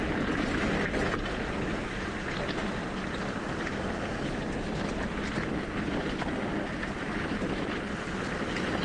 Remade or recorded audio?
recorded